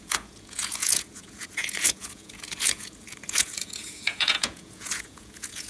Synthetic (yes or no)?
yes